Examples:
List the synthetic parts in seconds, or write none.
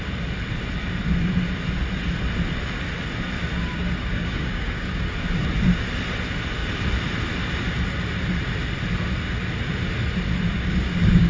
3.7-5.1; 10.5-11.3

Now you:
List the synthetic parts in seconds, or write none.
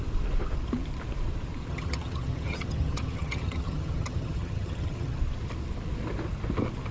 1.7-5.2